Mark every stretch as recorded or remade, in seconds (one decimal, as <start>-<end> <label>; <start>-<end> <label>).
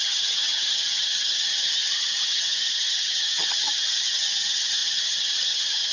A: 0.0-5.9 remade